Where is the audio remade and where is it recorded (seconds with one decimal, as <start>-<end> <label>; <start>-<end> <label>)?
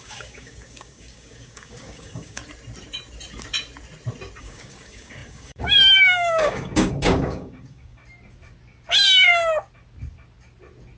0.0-2.4 remade; 2.4-4.4 recorded; 4.4-8.0 remade; 8.0-11.0 recorded